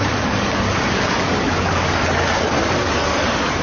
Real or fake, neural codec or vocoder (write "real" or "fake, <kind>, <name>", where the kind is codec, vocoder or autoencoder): fake, codec, DAC